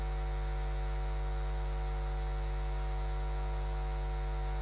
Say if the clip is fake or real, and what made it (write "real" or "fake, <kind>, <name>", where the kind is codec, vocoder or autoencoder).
real